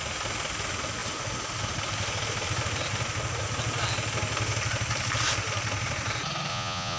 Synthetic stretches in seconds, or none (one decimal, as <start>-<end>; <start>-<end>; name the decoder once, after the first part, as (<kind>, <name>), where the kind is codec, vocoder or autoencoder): 6.5-7.0 (vocoder, Vocos)